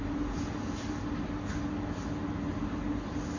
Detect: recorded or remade recorded